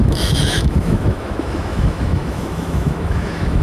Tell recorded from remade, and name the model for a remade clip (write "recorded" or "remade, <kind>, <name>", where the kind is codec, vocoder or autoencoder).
remade, autoencoder, DAC-VAE